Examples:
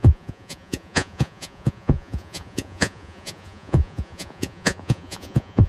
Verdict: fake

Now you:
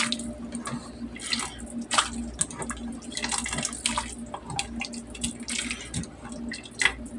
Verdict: real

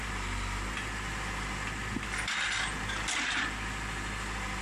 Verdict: real